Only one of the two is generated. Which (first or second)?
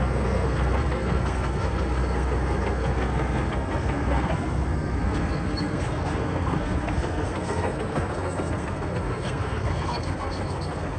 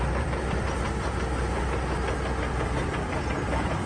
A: first